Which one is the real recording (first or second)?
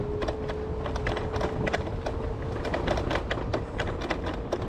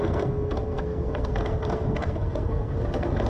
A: first